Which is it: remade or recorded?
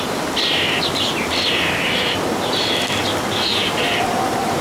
recorded